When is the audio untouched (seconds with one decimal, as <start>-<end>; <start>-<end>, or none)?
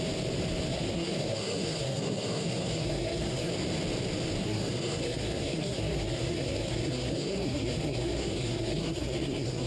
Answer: 0.0-0.7; 3.5-4.4